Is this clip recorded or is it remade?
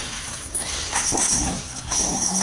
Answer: remade